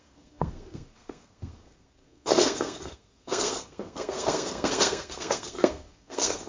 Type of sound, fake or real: fake